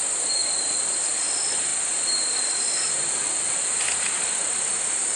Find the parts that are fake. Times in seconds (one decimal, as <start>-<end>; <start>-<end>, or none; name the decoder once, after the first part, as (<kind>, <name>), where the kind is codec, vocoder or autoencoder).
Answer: 0.4-1.0 (vocoder, BigVGAN v2)